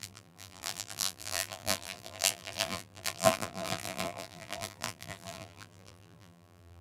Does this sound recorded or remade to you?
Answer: remade